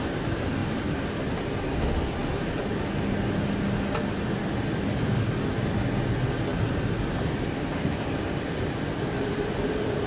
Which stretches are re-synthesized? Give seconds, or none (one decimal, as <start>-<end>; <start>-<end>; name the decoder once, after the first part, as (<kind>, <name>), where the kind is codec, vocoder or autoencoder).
none